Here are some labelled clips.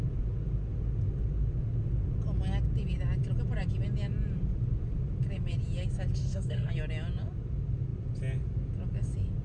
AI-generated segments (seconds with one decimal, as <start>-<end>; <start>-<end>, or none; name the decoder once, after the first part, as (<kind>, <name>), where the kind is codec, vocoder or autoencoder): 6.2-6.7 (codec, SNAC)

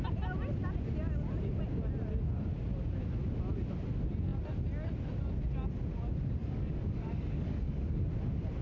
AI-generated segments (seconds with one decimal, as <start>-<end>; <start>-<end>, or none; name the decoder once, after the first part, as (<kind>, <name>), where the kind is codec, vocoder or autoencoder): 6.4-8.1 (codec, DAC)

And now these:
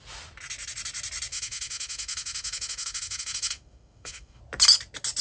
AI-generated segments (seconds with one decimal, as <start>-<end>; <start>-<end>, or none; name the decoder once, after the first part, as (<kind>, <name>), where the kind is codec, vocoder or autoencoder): 1.3-4.4 (autoencoder, DAC-VAE)

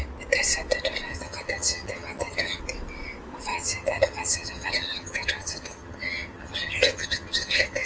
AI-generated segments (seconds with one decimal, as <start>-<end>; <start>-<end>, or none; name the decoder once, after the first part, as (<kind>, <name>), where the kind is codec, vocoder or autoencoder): 1.1-2.6 (vocoder, HiFi-GAN); 3.5-7.9